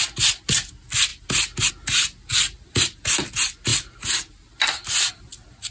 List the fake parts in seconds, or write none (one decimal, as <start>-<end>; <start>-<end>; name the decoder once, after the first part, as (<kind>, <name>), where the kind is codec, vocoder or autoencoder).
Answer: 2.3-3.0 (vocoder, BigVGAN v2)

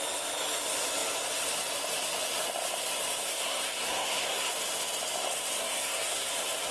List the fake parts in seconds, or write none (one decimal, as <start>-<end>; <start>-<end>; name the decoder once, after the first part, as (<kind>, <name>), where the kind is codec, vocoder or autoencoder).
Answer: 3.2-4.5 (codec, SNAC); 5.6-6.3